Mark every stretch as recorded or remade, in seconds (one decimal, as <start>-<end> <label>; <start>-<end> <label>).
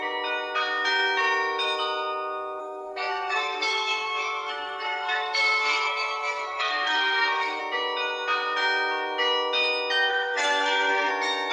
0.0-2.6 recorded; 2.6-7.6 remade; 7.6-10.1 recorded; 10.1-11.1 remade; 11.1-11.5 recorded